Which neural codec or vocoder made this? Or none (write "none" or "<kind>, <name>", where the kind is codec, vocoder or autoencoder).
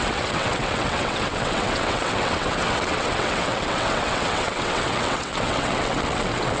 vocoder, WaveNeXt